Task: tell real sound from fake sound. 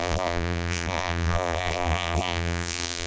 fake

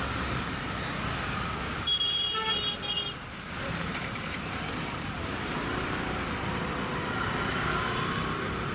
fake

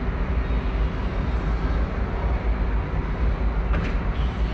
real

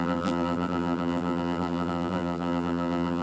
fake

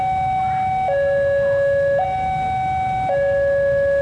real